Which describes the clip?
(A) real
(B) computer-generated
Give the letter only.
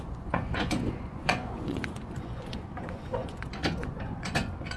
B